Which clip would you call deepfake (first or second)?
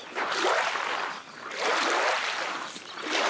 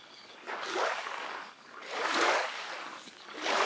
second